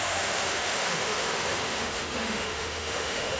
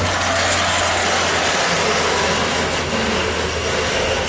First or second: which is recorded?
second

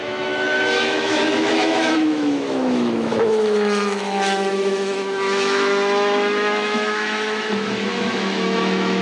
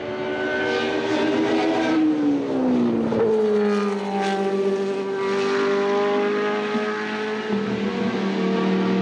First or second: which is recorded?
second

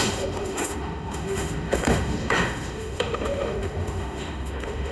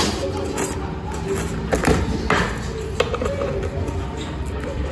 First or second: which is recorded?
second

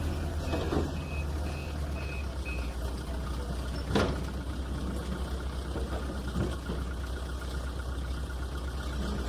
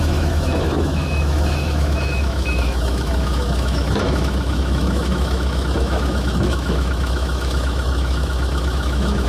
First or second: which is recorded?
first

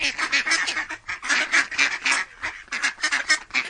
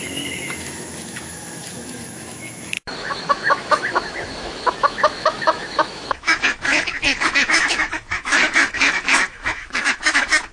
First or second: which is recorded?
first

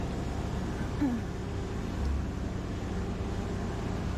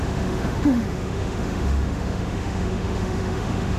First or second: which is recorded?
first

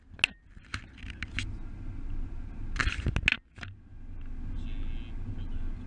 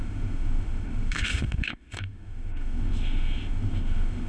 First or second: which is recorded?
first